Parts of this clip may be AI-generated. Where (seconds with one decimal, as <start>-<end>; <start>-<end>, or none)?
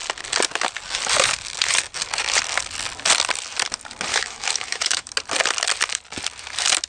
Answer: 4.1-5.1